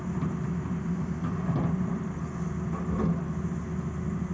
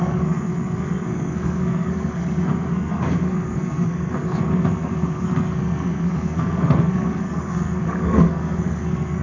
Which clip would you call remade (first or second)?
second